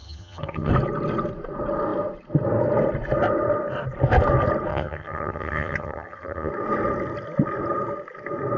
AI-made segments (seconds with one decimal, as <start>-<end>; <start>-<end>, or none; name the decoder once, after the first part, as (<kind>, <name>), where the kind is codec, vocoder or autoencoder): 0.0-0.7 (vocoder, HiFi-GAN); 4.7-6.5